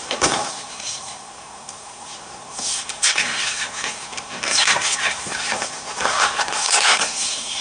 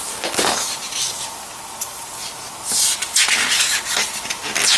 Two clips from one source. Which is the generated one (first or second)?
first